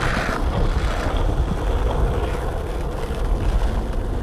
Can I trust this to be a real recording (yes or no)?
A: yes